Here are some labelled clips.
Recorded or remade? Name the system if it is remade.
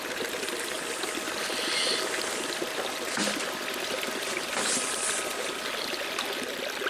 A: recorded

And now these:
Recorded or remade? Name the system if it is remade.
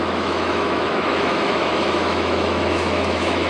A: remade, autoencoder, DAC-VAE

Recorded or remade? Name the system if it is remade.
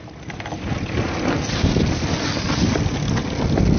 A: recorded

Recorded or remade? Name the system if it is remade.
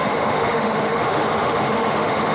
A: remade, autoencoder, DAC-VAE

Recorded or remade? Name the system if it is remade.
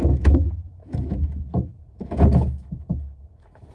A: remade, autoencoder, DAC-VAE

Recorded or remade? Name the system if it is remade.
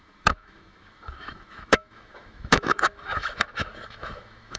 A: remade, autoencoder, DAC-VAE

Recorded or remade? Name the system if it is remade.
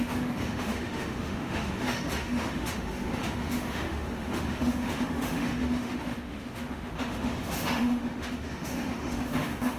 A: remade, autoencoder, DAC-VAE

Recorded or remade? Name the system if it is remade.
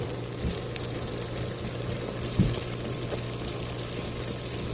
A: recorded